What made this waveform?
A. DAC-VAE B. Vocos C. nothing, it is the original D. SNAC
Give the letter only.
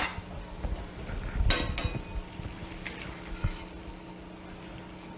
C